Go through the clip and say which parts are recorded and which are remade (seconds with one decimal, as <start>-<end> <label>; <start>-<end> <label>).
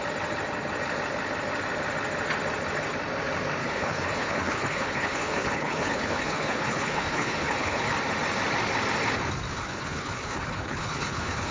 0.0-3.6 recorded; 3.6-7.9 remade; 7.9-9.5 recorded; 9.5-11.5 remade